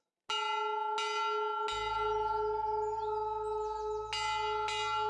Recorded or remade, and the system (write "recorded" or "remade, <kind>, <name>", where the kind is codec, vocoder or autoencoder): recorded